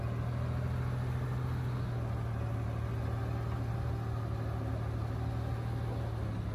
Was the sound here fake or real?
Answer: real